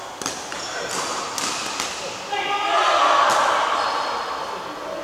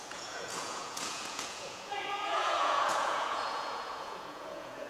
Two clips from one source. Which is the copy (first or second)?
second